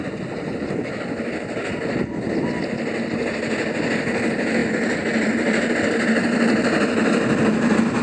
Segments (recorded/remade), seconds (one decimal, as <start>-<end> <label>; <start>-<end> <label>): 0.0-8.0 recorded